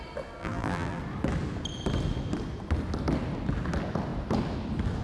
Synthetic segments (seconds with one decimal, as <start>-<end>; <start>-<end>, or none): 0.4-1.0